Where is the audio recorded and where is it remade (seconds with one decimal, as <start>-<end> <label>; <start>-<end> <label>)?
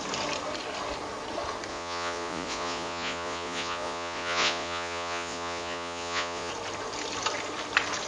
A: 0.0-1.7 recorded; 1.7-6.5 remade; 6.5-8.1 recorded